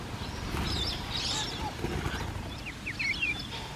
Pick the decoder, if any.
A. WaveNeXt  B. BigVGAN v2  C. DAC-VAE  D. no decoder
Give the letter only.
D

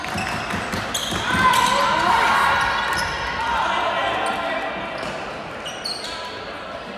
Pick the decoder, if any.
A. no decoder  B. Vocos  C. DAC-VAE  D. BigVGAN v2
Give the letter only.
A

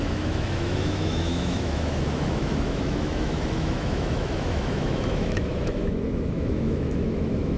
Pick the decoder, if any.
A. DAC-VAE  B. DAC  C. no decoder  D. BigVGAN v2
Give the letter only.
A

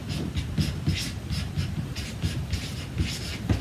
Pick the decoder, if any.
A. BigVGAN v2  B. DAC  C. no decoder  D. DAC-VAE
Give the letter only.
C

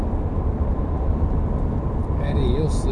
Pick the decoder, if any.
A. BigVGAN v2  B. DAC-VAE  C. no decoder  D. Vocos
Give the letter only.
C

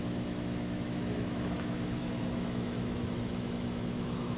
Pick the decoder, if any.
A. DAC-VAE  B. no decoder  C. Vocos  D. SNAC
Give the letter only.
A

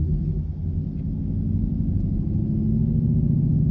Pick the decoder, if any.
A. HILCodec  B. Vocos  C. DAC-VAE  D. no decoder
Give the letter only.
D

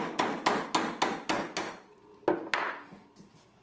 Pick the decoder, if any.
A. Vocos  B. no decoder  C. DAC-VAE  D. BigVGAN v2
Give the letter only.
B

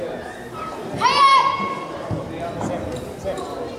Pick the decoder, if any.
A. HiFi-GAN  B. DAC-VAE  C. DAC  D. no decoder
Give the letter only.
D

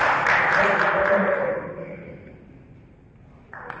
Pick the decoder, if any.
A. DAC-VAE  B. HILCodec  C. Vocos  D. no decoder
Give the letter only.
D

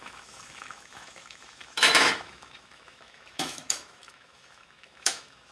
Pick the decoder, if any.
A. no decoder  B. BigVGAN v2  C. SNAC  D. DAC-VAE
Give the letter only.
D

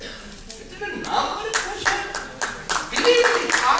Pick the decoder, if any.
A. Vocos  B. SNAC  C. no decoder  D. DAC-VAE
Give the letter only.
C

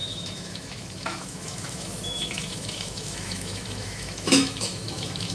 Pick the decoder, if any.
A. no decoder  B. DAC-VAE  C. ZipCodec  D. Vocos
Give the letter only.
B